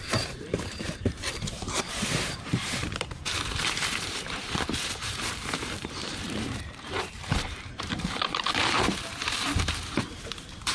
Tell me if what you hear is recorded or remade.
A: remade